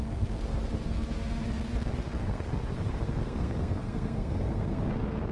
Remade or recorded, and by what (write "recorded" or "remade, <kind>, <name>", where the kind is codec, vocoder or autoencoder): remade, codec, SNAC